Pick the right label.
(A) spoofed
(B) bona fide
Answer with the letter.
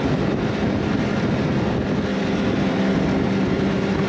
B